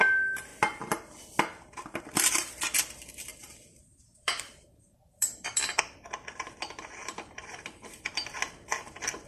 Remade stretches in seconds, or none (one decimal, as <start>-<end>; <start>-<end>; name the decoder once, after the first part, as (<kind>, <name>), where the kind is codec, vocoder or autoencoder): 3.3-5.8 (vocoder, BigVGAN v2); 7.0-8.1